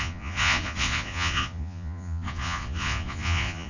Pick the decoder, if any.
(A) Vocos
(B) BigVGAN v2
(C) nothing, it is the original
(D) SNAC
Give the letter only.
A